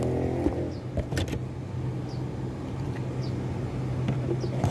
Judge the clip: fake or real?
real